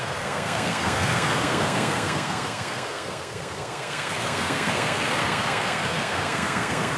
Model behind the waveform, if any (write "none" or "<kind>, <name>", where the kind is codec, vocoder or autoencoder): codec, SNAC